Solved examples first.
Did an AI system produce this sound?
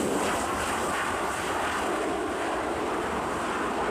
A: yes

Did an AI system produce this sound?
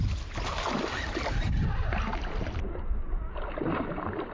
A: no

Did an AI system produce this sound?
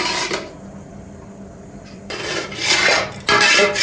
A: yes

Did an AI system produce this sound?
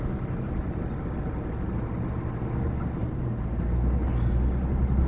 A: no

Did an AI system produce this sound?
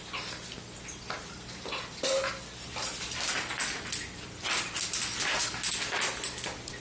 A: no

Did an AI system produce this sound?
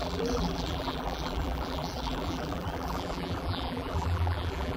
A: yes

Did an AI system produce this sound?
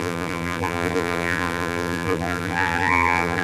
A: yes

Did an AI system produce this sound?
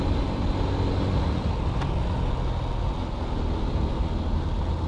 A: no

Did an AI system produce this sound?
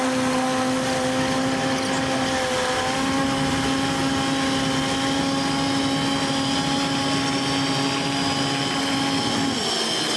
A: no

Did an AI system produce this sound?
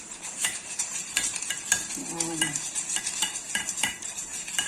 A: yes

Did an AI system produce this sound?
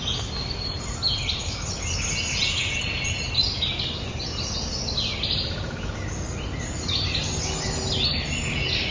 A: no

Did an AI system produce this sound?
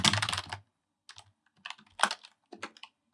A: no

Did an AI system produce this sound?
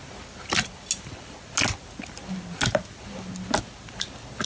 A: no